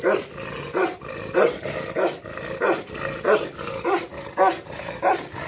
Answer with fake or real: real